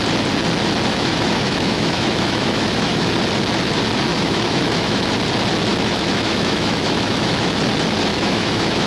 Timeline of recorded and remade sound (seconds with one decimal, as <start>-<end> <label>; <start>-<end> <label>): 0.0-0.9 recorded; 0.9-3.1 remade; 3.1-4.1 recorded; 4.1-5.1 remade; 5.1-5.7 recorded; 5.7-7.6 remade; 7.6-8.1 recorded; 8.1-8.9 remade